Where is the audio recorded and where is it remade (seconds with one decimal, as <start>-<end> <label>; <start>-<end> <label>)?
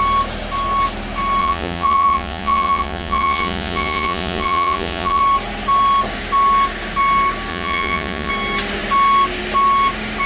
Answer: 0.0-1.4 recorded; 1.4-5.2 remade; 5.2-7.5 recorded; 7.5-8.3 remade; 8.3-10.3 recorded